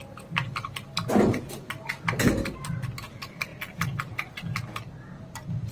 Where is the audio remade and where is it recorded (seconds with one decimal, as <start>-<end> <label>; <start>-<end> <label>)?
0.0-5.7 recorded